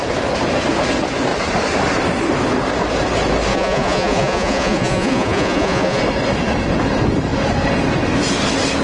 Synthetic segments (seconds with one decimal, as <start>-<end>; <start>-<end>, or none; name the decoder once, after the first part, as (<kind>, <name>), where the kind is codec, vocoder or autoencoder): 3.5-6.0 (vocoder, Vocos)